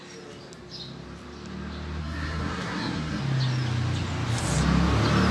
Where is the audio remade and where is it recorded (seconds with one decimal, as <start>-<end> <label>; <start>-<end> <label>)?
0.0-2.0 recorded; 2.0-3.2 remade; 3.2-5.3 recorded